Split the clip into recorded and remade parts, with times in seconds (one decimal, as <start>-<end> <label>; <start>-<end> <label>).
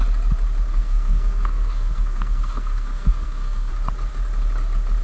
0.0-0.7 recorded; 0.7-3.7 remade; 3.7-5.0 recorded